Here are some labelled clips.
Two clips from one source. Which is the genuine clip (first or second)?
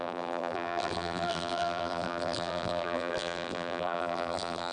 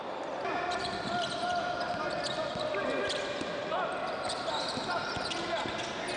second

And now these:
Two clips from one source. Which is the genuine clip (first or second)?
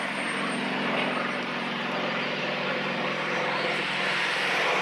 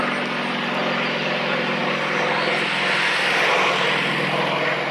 second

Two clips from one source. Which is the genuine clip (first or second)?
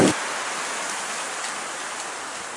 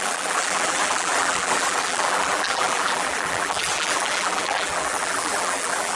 first